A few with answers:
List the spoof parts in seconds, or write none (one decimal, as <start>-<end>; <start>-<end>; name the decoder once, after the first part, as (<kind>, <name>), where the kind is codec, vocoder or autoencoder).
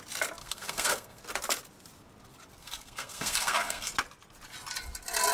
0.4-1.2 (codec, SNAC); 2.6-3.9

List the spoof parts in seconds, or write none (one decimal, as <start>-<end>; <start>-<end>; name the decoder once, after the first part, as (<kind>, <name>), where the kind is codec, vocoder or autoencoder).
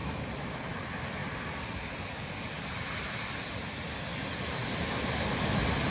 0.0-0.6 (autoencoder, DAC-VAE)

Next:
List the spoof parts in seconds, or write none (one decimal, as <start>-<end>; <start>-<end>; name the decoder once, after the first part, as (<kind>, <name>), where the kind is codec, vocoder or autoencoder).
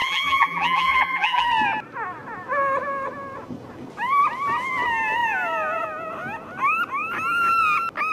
0.0-1.5 (vocoder, BigVGAN v2)